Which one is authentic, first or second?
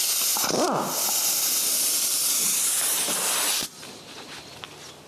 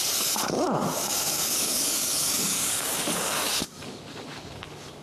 first